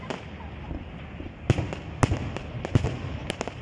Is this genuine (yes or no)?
yes